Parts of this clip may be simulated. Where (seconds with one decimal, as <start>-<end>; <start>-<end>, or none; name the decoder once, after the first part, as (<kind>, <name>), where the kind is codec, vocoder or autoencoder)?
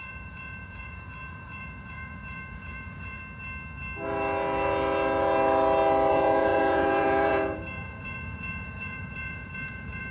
0.0-3.2 (vocoder, Vocos); 6.1-10.1